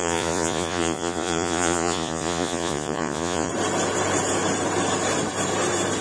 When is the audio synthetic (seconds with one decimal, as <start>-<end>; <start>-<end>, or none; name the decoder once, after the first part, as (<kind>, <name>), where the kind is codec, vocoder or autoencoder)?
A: 0.0-3.5 (vocoder, Vocos)